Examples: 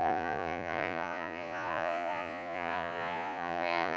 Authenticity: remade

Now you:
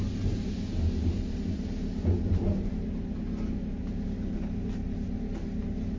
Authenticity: recorded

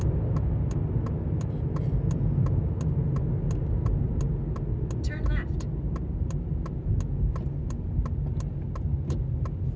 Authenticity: recorded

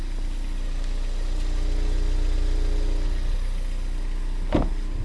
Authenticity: recorded